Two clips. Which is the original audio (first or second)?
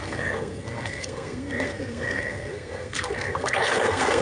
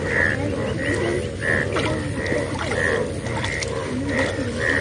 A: second